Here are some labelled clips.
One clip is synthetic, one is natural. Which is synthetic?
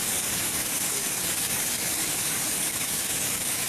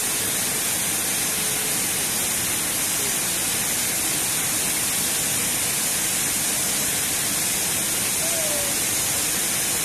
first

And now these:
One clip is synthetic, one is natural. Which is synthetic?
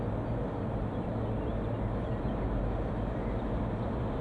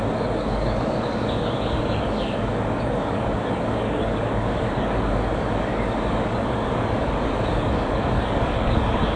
second